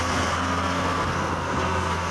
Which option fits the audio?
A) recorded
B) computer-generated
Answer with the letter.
B